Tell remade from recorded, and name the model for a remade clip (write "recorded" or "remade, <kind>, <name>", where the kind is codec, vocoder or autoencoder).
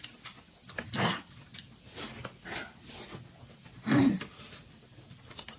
recorded